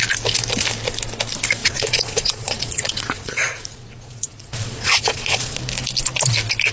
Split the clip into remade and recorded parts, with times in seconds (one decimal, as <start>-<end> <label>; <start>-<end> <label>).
0.0-1.6 recorded; 1.6-5.6 remade; 5.6-6.7 recorded